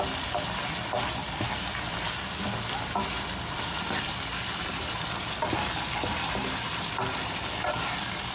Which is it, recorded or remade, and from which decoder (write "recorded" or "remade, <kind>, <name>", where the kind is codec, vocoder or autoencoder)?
recorded